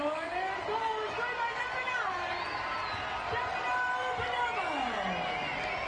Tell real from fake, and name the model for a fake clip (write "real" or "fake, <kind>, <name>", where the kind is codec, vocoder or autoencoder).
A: real